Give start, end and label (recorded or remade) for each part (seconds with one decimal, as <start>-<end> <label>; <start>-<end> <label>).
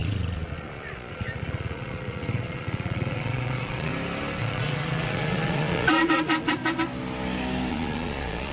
0.0-3.9 remade; 3.9-4.4 recorded; 4.4-6.6 remade; 6.6-7.7 recorded; 7.7-8.5 remade